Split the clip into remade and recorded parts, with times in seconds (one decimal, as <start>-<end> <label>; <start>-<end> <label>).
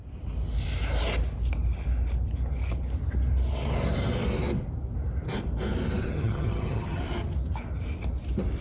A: 0.0-6.0 recorded; 6.0-7.0 remade; 7.0-8.6 recorded